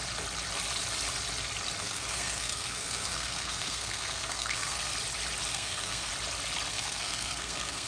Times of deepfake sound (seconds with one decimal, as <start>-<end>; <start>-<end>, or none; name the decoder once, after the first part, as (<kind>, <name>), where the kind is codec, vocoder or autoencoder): 1.8-4.9 (codec, SNAC); 5.5-6.1; 6.7-7.9